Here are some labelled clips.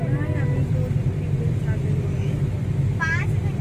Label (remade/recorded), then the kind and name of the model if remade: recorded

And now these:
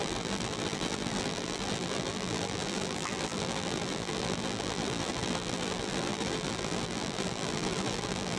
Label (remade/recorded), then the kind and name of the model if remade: remade, vocoder, BigVGAN v2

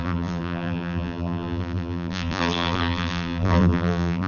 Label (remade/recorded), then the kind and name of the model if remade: remade, vocoder, BigVGAN v2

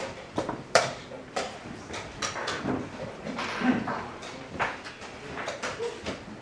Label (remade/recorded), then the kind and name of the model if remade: remade, vocoder, BigVGAN v2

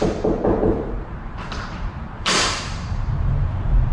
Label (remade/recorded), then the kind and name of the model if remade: remade, vocoder, BigVGAN v2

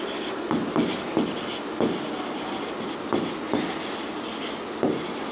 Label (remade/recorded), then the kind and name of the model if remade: recorded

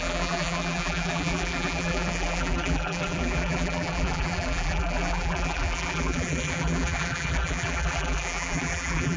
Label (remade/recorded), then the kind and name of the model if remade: remade, vocoder, BigVGAN v2